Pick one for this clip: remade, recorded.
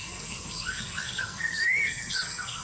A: remade